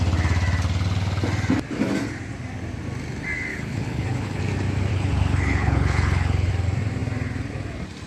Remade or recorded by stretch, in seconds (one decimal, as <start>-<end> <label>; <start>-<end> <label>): 0.0-3.5 recorded; 3.5-4.4 remade; 4.4-4.9 recorded; 4.9-6.5 remade; 6.5-8.1 recorded